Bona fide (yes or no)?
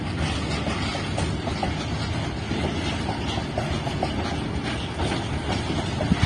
yes